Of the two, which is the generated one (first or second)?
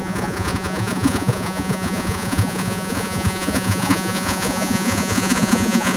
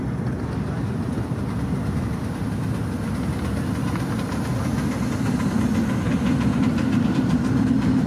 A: first